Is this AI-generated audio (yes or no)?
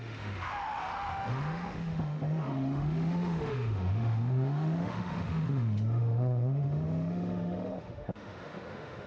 yes